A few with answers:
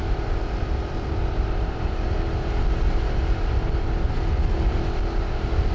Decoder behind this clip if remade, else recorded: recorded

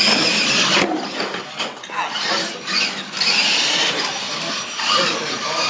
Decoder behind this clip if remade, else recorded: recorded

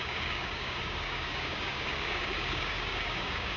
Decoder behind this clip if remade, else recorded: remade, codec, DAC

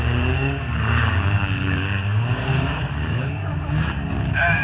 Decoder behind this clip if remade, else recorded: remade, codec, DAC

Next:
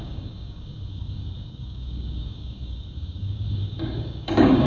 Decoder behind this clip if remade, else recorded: remade, codec, DAC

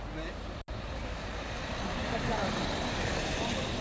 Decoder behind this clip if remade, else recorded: recorded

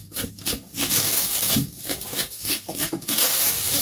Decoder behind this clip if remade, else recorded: remade, codec, DAC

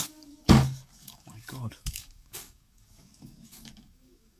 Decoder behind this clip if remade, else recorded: remade, codec, DAC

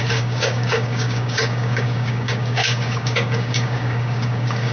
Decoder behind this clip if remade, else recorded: remade, codec, DAC